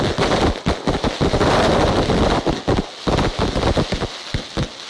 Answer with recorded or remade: recorded